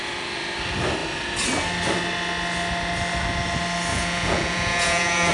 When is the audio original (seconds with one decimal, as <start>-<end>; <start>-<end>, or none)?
0.0-3.9